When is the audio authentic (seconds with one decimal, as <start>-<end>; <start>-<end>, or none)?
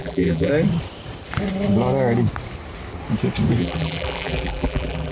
0.5-3.6